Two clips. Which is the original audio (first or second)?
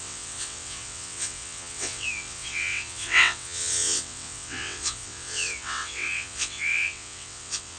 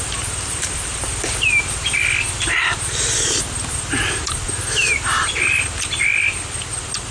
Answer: second